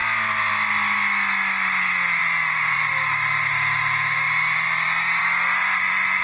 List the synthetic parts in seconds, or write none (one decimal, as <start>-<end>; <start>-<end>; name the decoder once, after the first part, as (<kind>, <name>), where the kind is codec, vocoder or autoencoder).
none